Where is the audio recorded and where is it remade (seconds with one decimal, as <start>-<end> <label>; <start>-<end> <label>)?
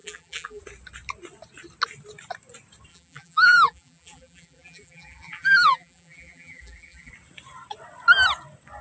0.0-0.6 remade; 0.6-2.9 recorded; 2.9-7.1 remade; 7.1-8.8 recorded